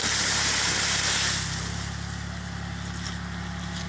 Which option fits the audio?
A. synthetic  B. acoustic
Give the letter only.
B